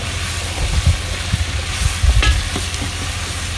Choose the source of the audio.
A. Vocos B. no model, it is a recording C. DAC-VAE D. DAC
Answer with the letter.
B